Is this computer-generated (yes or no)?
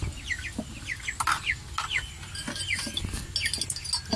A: no